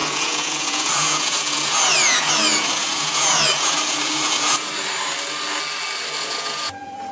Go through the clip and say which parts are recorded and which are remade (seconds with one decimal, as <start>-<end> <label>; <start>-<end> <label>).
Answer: 0.0-4.7 remade; 4.7-6.2 recorded; 6.2-7.1 remade